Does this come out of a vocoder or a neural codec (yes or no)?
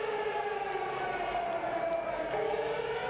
no